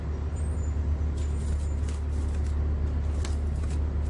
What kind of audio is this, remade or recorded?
recorded